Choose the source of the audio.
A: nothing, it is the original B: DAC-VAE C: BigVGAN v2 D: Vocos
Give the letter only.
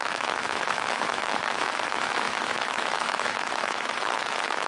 B